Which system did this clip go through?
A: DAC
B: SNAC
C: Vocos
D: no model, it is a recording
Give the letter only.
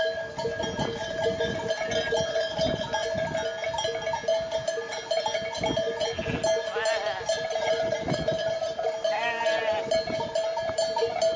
D